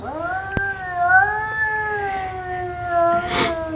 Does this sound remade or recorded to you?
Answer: recorded